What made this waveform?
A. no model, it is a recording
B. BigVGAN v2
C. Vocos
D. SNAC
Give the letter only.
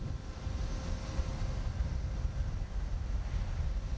A